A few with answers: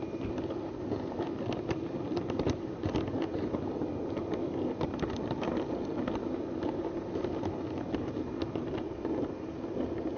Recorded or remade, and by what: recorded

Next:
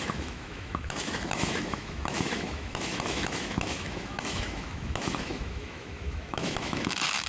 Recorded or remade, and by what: remade, autoencoder, DAC-VAE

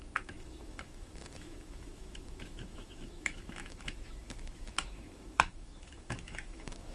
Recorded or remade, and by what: remade, autoencoder, DAC-VAE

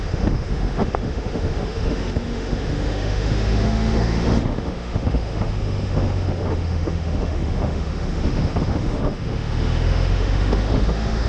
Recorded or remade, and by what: remade, autoencoder, DAC-VAE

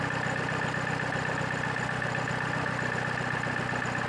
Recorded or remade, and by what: recorded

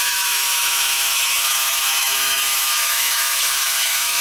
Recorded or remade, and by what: remade, autoencoder, DAC-VAE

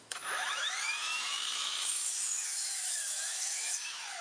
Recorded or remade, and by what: remade, autoencoder, DAC-VAE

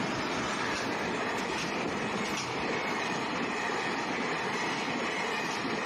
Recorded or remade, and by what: recorded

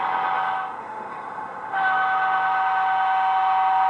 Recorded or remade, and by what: remade, autoencoder, DAC-VAE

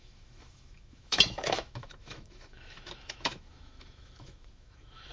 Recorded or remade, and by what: remade, autoencoder, DAC-VAE